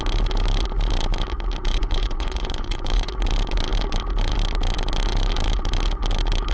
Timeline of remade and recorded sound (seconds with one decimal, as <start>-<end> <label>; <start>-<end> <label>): 0.0-1.6 recorded; 1.6-3.1 remade; 3.1-6.5 recorded